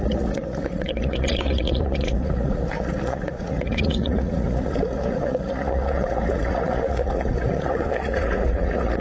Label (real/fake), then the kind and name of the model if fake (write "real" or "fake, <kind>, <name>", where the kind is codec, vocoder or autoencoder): fake, vocoder, Vocos